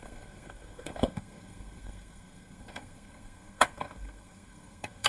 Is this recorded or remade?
remade